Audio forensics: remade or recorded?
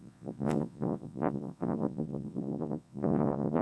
remade